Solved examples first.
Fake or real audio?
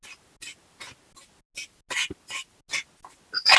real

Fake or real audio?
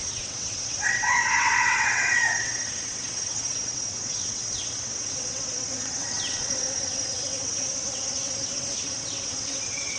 fake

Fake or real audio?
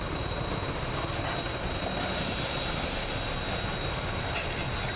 real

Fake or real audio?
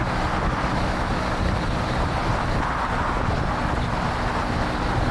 real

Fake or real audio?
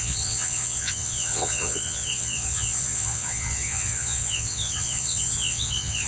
fake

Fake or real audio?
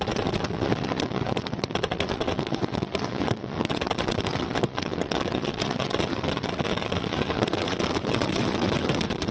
fake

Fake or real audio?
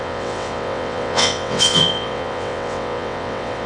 fake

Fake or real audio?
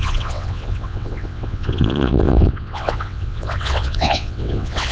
fake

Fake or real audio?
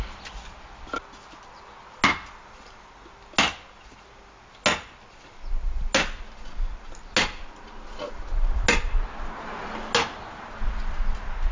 real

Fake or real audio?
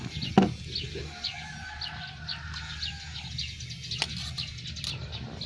real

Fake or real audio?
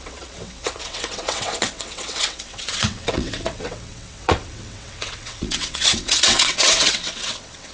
fake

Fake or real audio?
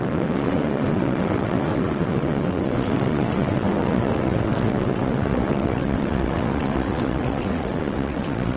fake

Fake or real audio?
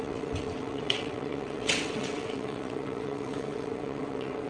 fake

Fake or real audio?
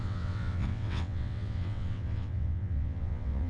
fake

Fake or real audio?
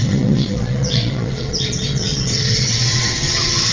fake